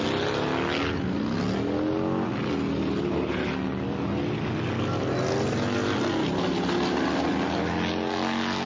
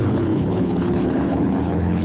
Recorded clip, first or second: first